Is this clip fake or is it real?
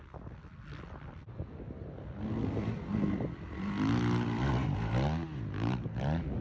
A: real